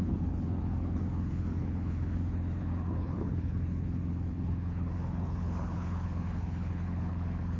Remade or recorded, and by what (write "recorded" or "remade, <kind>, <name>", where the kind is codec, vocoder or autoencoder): remade, codec, HILCodec